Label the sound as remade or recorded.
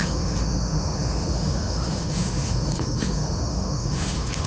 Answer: remade